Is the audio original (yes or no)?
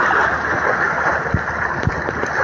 yes